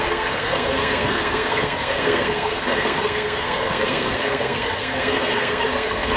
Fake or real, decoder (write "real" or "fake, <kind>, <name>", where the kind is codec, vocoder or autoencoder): fake, codec, SNAC